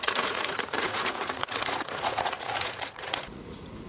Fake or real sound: fake